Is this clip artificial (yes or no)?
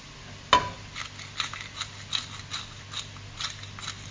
no